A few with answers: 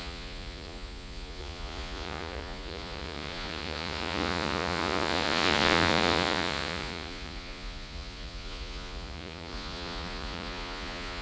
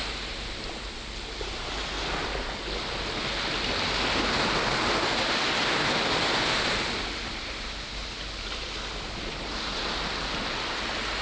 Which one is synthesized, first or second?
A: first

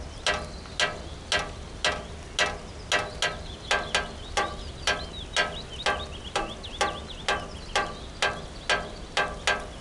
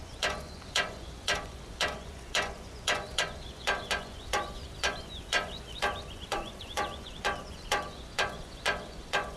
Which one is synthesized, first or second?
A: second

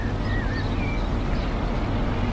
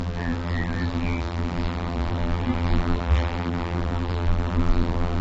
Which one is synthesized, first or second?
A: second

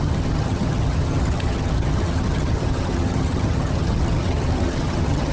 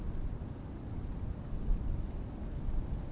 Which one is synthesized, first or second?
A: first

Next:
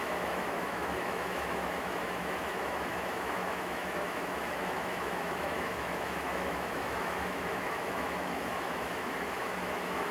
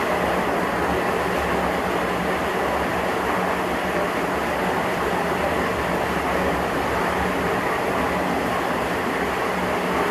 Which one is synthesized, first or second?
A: first